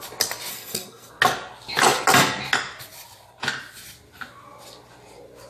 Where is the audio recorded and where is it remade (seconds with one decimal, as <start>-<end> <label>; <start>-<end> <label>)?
0.0-0.5 recorded; 0.5-1.1 remade; 1.1-5.5 recorded